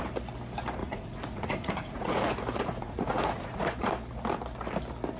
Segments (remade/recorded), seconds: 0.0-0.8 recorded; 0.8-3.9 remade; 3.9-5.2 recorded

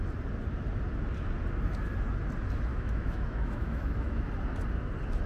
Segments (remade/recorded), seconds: 0.0-2.7 recorded; 2.7-4.3 remade; 4.3-5.3 recorded

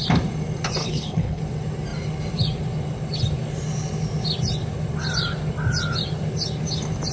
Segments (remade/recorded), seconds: 0.0-0.8 recorded; 0.8-1.4 remade; 1.4-7.1 recorded

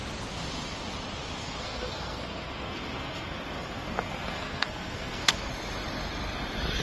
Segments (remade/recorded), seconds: 0.0-1.4 recorded; 1.4-5.5 remade; 5.5-6.8 recorded

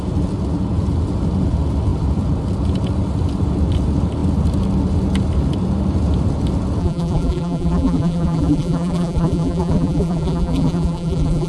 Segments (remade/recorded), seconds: 0.0-6.8 recorded; 6.8-11.5 remade

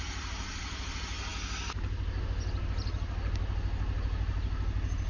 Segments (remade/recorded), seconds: 0.0-5.1 recorded

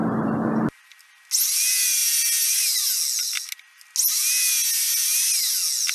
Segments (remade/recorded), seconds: 0.0-5.9 recorded